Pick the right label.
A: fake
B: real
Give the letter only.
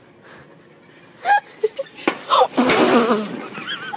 B